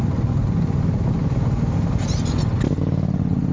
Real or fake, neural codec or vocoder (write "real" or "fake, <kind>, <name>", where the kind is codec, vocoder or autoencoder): real